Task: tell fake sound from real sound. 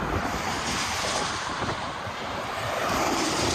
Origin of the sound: fake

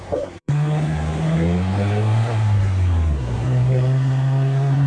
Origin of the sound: fake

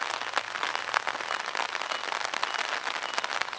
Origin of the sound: real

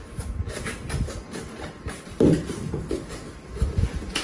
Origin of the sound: real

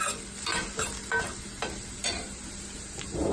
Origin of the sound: real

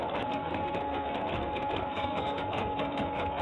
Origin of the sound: fake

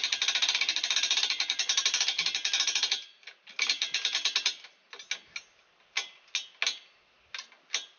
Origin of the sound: real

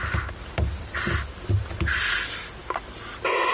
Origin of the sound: real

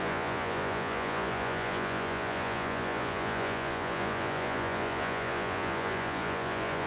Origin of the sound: fake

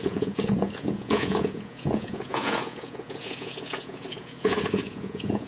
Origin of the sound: fake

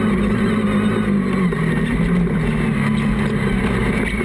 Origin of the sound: real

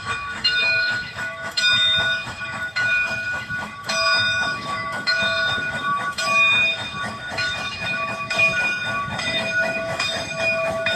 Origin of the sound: fake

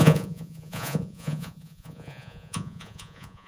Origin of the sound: fake